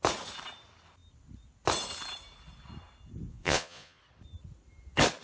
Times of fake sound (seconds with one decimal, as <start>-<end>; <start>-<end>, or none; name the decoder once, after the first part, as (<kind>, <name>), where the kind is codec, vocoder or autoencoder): 3.3-4.0 (vocoder, Vocos)